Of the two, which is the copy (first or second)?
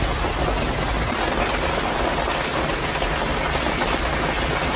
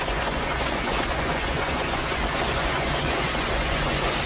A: second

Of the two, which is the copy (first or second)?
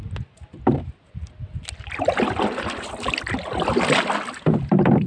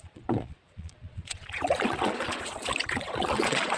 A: second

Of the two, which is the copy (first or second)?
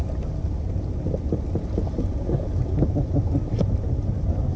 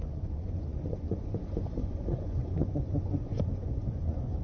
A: second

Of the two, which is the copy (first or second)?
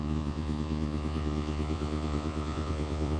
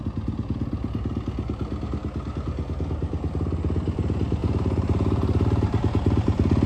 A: first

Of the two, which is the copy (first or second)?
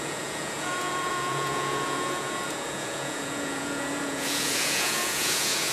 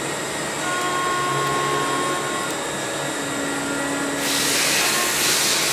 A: first